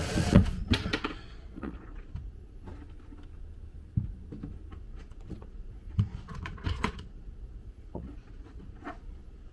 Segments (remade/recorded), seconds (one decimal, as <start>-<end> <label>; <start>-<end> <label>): 0.0-2.7 remade; 2.7-4.7 recorded; 4.7-9.5 remade